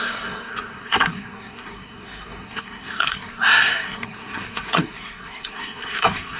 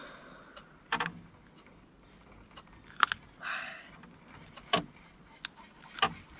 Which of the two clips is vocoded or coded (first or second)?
first